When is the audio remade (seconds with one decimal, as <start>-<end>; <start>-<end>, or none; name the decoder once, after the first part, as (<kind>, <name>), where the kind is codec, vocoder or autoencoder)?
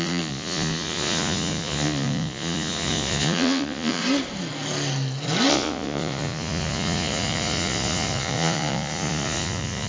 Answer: 0.0-4.0 (vocoder, Vocos); 5.5-9.9